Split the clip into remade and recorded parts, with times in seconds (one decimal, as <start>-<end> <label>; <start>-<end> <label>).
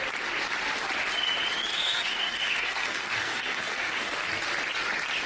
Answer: 0.0-1.7 recorded; 1.7-4.4 remade; 4.4-5.3 recorded